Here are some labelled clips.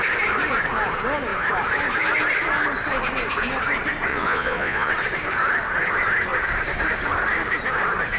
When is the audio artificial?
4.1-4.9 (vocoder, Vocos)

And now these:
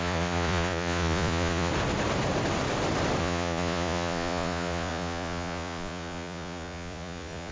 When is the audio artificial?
0.0-1.7 (vocoder, Vocos); 3.2-7.5

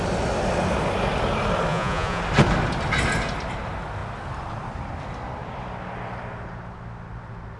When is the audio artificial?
1.7-2.2 (vocoder, Vocos)

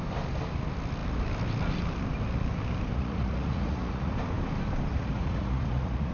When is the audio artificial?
2.9-4.1 (vocoder, Vocos); 4.9-6.1

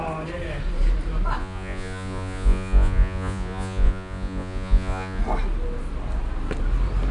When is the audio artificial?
1.4-5.2 (vocoder, Vocos)

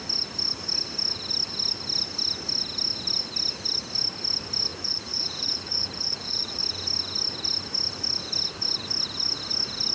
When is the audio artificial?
4.7-6.6 (vocoder, Vocos)

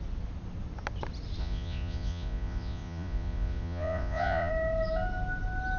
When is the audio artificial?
1.4-4.5 (vocoder, Vocos)